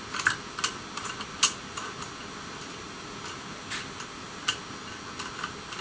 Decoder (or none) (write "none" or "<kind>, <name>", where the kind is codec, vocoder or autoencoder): none